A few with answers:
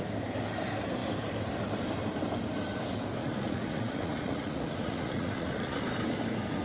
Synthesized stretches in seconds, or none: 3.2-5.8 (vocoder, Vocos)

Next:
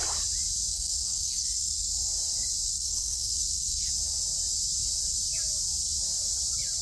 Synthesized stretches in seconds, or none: 0.7-2.1 (codec, SNAC); 2.7-3.9

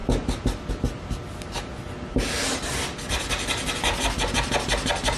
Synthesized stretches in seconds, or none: none

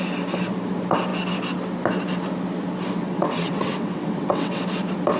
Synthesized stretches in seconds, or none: 3.0-4.6 (vocoder, WaveNeXt)

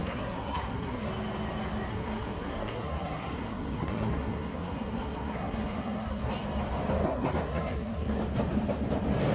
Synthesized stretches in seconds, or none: 0.0-1.1 (codec, SNAC); 1.9-6.3; 7.0-8.2

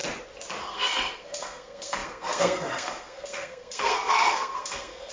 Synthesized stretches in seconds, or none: 0.6-5.1 (codec, SNAC)